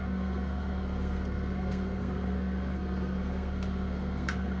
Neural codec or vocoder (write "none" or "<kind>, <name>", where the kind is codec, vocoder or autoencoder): codec, SNAC